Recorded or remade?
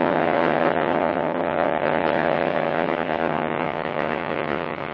remade